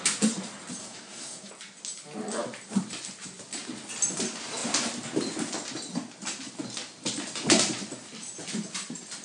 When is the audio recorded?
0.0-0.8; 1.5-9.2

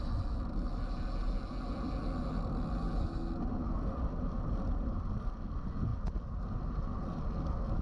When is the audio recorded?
0.0-7.8

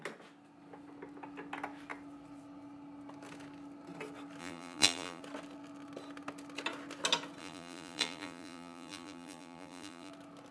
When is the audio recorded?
0.0-4.4; 5.2-7.4; 10.1-10.5

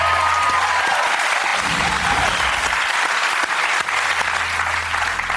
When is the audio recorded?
0.0-5.4

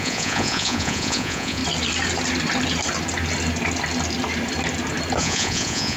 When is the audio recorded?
1.6-5.2

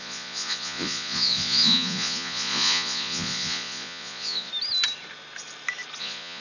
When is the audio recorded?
4.5-6.0

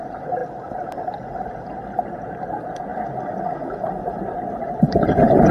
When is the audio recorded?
0.4-2.3; 2.9-4.0

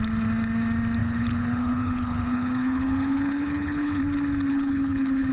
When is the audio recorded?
0.0-1.0; 4.0-4.5